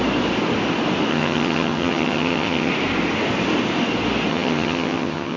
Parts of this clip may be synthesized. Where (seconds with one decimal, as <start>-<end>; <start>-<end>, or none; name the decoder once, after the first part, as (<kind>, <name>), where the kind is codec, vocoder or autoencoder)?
1.1-2.7 (vocoder, HiFi-GAN); 4.3-5.4